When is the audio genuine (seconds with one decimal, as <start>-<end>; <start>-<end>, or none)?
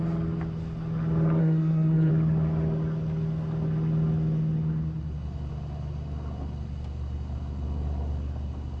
0.0-1.4; 2.1-8.8